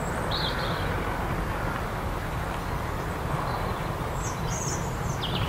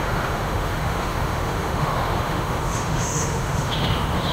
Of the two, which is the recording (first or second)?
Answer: first